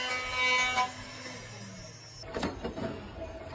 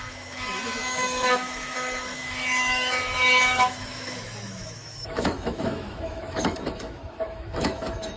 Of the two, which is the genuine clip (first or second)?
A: first